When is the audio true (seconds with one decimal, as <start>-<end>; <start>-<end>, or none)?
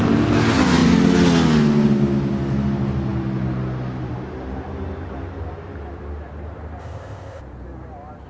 0.0-6.8; 7.4-8.3